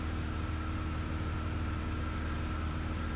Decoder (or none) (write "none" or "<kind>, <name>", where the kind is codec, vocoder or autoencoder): none